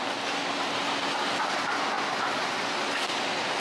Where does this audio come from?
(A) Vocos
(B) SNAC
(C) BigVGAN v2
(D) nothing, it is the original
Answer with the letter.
D